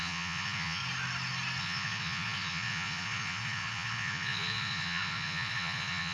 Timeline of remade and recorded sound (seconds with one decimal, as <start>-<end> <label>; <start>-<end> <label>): 0.0-0.8 remade; 0.8-1.6 recorded; 1.6-6.1 remade